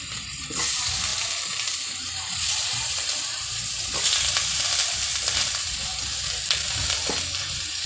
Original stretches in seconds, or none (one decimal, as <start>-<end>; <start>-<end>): none